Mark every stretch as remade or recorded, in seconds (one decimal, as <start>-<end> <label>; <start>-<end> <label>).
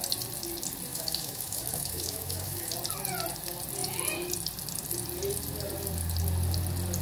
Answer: 0.0-0.9 recorded; 0.9-2.7 remade; 2.7-7.0 recorded